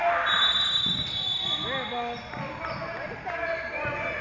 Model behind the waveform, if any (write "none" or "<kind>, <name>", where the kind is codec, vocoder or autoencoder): none